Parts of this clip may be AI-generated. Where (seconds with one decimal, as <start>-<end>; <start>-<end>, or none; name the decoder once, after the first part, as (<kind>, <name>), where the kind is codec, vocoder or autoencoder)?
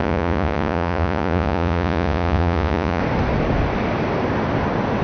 0.0-3.0 (vocoder, Vocos)